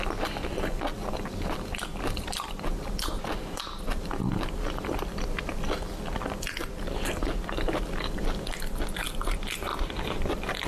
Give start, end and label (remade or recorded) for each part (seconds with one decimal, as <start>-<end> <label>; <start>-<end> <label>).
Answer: 0.0-10.7 recorded